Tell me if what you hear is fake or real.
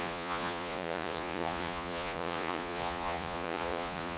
fake